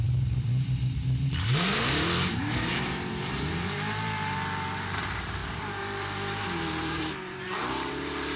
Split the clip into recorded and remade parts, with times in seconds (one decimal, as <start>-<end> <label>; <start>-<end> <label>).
0.0-8.4 remade

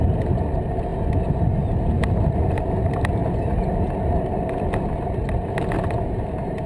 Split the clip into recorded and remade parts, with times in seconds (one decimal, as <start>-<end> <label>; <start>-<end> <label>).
0.0-6.7 recorded